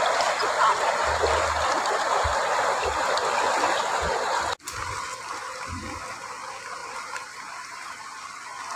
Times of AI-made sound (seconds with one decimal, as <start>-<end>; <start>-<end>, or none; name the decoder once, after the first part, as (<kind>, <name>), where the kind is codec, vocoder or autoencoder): 6.8-7.9 (vocoder, BigVGAN v2)